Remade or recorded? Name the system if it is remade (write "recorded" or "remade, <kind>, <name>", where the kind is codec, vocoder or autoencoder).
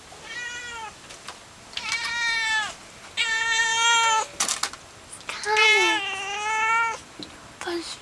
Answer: recorded